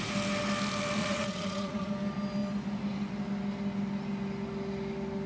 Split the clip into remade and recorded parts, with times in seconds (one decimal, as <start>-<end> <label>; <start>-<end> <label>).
0.0-1.0 recorded; 1.0-1.9 remade; 1.9-5.3 recorded